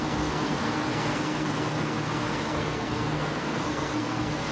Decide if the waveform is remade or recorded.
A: remade